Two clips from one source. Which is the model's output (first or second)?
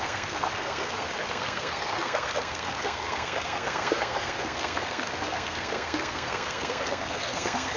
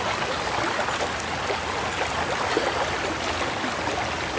first